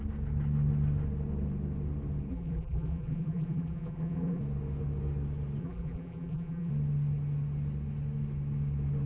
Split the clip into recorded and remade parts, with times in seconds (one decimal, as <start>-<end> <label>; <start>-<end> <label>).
0.0-2.3 recorded; 2.3-4.4 remade; 4.4-5.6 recorded; 5.6-6.7 remade; 6.7-9.1 recorded